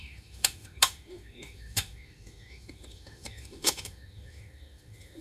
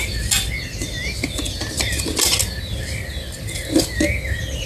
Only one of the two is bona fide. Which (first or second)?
second